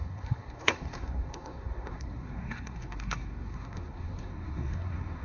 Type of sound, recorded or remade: remade